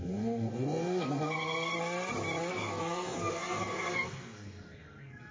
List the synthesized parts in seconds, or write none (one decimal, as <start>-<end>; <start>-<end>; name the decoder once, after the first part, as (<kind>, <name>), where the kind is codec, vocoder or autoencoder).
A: 0.0-1.7 (codec, SNAC); 2.5-5.3

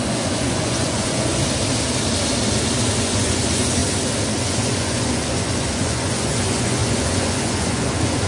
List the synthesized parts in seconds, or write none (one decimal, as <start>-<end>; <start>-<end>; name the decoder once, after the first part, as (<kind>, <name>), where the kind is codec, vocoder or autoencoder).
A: 0.0-1.4 (vocoder, Vocos); 3.0-3.8; 4.4-8.3

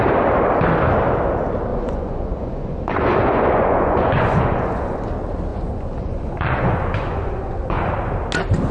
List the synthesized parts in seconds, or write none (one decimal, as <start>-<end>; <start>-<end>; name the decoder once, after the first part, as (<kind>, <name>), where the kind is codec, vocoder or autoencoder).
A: 1.7-5.1 (vocoder, Vocos); 5.5-7.9